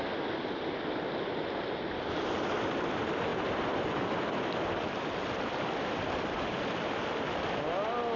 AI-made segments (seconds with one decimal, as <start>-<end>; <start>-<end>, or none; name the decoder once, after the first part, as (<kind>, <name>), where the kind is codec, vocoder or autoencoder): none